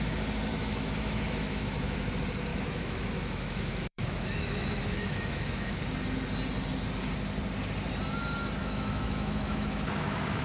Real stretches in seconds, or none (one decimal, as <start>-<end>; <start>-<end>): 0.0-0.5; 2.1-2.5; 5.8-8.6